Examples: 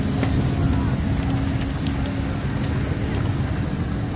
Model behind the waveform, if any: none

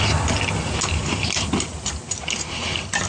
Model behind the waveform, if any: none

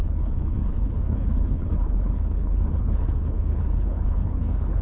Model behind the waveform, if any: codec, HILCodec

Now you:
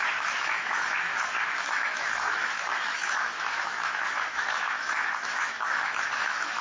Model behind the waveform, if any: autoencoder, DAC-VAE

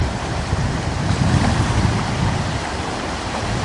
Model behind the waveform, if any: vocoder, BigVGAN v2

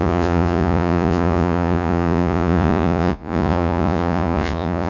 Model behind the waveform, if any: vocoder, Vocos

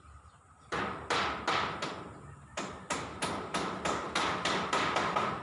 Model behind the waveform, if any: vocoder, BigVGAN v2